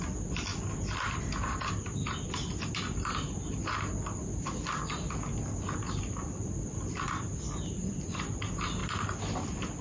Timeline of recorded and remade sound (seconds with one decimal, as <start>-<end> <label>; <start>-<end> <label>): 0.0-0.5 remade; 0.5-1.2 recorded; 1.2-2.0 remade; 2.0-6.0 recorded; 6.0-9.8 remade